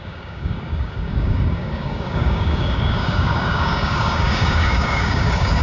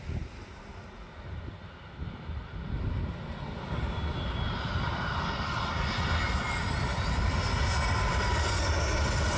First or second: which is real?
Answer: second